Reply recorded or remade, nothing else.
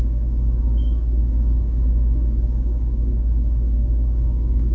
remade